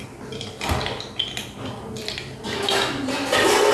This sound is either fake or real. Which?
real